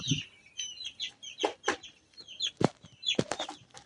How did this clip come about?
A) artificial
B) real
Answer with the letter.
B